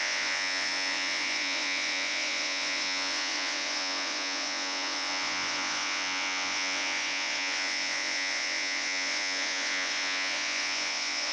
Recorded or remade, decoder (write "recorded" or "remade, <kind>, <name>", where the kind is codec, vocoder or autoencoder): remade, vocoder, Vocos